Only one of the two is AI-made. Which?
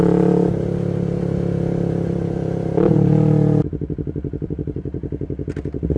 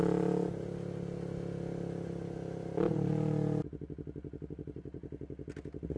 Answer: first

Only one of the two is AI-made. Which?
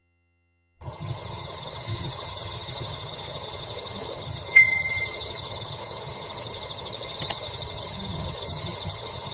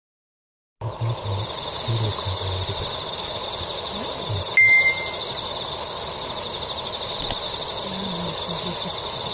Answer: first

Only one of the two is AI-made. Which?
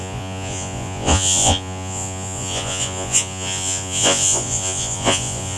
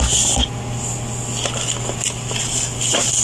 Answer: first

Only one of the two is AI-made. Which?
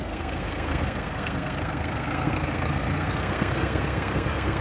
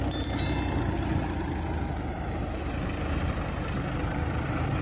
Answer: first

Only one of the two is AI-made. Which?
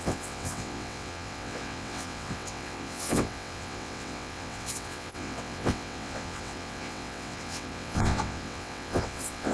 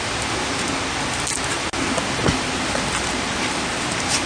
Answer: first